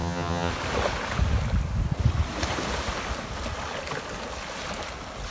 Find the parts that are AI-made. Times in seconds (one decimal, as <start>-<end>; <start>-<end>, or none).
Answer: 0.0-0.5